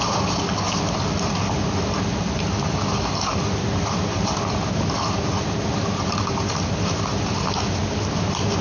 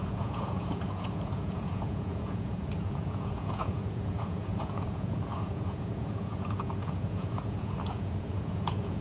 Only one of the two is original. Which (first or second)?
first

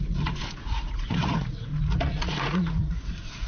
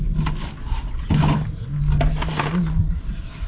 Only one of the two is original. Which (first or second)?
second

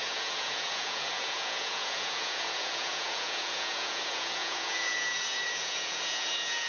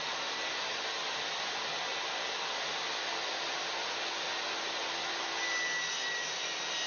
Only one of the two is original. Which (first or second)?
second